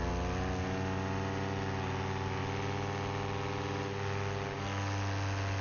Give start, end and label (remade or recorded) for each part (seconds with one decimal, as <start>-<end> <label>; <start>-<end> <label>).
0.0-5.6 recorded